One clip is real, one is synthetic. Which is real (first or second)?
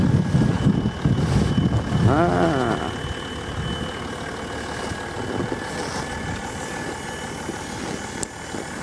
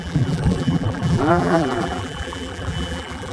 first